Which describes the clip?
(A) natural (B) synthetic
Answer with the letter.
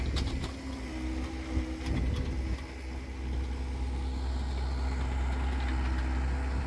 A